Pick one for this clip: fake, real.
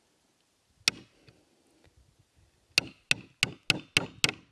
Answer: real